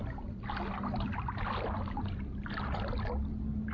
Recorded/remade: recorded